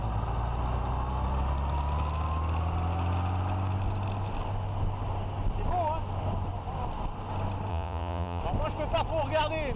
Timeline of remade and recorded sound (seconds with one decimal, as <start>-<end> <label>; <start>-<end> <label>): 0.0-7.7 recorded; 7.7-8.4 remade; 8.4-9.8 recorded